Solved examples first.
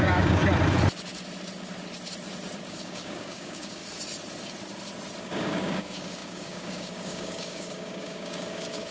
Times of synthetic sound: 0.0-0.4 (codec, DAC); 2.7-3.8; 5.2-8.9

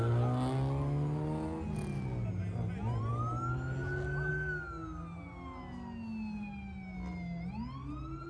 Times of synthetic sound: none